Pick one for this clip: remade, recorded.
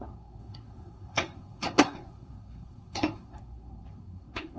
remade